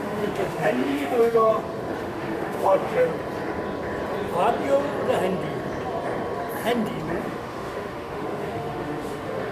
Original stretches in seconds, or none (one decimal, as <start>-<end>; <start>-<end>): 1.5-2.0; 3.1-7.2

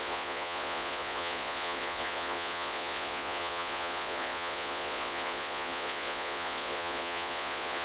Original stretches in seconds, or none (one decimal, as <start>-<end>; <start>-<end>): none